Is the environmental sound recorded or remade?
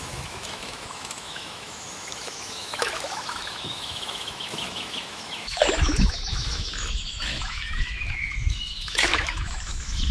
remade